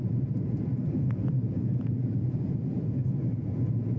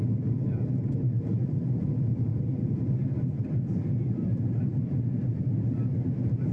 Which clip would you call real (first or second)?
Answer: second